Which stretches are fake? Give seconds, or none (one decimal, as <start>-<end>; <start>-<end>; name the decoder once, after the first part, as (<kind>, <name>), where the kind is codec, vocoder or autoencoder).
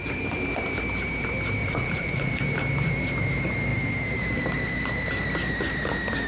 1.6-2.3 (vocoder, Vocos)